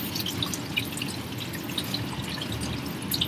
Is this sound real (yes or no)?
yes